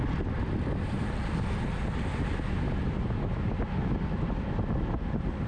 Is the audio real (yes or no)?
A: yes